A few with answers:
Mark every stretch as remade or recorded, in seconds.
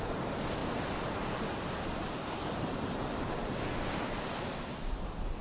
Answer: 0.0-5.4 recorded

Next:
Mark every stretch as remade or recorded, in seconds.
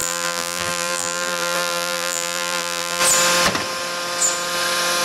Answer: 0.0-3.0 remade; 3.0-5.0 recorded